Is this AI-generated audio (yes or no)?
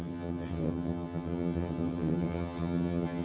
yes